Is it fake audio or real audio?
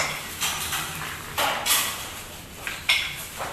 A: real